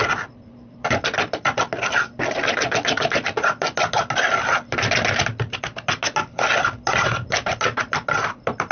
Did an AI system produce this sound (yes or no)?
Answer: no